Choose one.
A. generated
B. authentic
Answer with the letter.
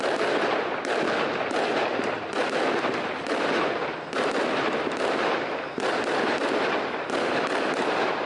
B